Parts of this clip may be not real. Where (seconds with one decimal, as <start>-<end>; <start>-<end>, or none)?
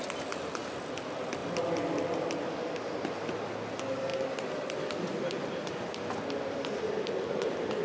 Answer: none